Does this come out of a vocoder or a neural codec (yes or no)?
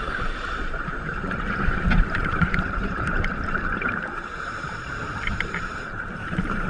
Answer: yes